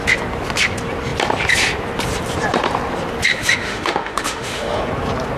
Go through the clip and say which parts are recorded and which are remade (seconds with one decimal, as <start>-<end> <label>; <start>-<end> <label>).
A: 0.0-3.3 recorded; 3.3-4.8 remade; 4.8-5.4 recorded